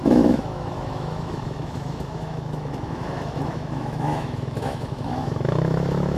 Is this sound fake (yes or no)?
yes